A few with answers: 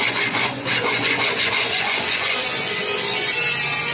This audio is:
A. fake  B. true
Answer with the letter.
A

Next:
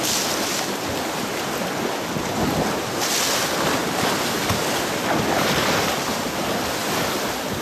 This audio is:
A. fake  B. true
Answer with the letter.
B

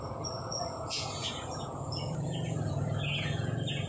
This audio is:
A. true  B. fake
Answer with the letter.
B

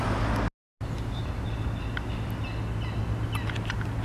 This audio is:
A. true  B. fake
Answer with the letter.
A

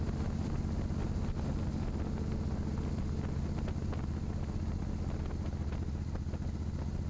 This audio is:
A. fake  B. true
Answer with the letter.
B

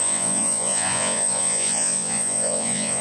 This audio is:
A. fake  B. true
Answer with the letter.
A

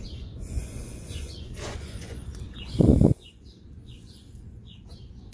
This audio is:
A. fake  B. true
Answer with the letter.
A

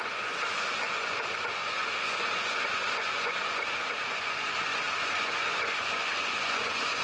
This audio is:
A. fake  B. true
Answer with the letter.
A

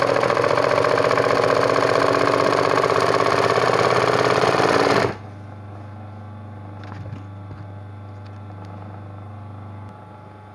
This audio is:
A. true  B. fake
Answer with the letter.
A